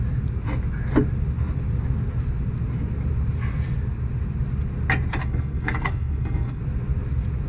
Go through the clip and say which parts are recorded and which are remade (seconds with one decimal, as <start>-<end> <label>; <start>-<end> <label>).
0.0-5.2 recorded; 5.2-6.6 remade; 6.6-7.5 recorded